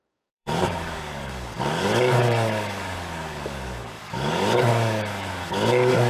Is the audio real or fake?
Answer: fake